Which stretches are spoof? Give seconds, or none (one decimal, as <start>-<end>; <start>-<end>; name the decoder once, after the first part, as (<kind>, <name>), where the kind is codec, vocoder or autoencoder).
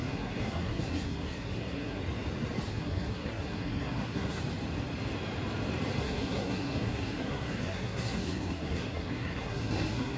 0.0-2.0 (codec, SNAC); 2.7-4.4; 6.0-10.2